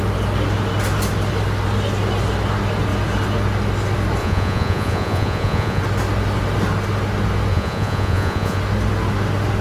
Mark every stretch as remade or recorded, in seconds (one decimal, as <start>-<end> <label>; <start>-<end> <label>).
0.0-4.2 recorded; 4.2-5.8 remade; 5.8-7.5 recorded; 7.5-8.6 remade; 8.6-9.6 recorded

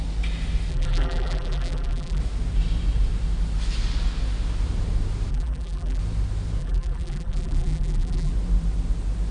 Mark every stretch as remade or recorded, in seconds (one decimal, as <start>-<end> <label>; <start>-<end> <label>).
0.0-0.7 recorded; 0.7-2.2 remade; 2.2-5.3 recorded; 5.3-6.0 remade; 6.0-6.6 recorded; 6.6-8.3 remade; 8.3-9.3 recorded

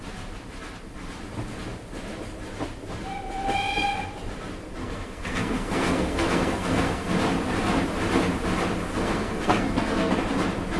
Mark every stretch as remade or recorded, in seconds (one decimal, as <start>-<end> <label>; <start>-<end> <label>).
0.0-4.8 recorded; 4.8-7.1 remade; 7.1-8.9 recorded; 8.9-10.1 remade; 10.1-10.8 recorded